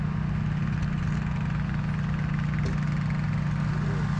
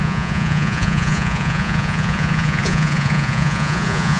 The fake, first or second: second